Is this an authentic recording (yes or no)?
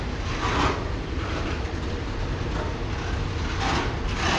yes